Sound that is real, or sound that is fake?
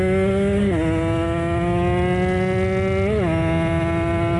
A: real